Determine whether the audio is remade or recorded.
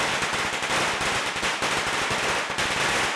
recorded